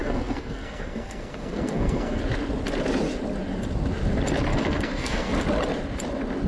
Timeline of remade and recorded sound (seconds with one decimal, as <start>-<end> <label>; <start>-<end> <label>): 0.0-2.2 remade; 2.2-4.5 recorded; 4.5-5.3 remade; 5.3-6.5 recorded

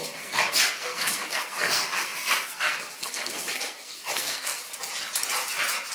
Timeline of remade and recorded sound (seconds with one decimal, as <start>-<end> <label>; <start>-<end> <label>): 0.0-4.6 remade; 4.6-5.9 recorded

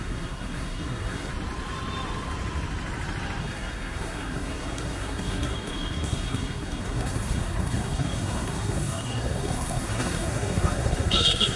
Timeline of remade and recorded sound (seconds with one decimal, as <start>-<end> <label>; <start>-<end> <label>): 0.0-1.3 remade; 1.3-3.4 recorded; 3.4-11.6 remade

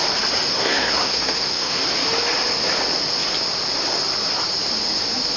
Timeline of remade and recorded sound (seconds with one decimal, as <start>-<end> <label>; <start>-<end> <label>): 0.0-0.5 recorded; 0.5-1.8 remade; 1.8-5.4 recorded

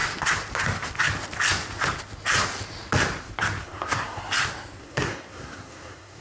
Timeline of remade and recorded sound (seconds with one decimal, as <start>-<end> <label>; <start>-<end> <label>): 0.0-3.6 recorded; 3.6-4.2 remade; 4.2-4.8 recorded; 4.8-6.2 remade

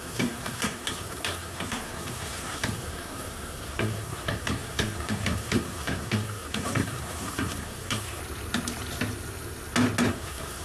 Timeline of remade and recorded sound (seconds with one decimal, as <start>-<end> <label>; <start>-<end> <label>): 0.0-8.2 remade; 8.2-10.1 recorded; 10.1-10.6 remade

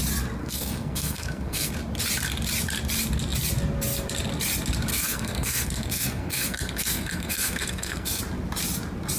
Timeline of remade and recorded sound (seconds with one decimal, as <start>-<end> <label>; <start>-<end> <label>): 0.0-0.4 recorded; 0.4-1.7 remade; 1.7-4.9 recorded; 4.9-8.2 remade; 8.2-9.2 recorded